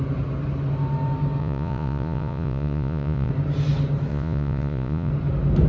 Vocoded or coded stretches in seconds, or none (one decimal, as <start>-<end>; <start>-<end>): 1.4-3.3; 4.1-5.1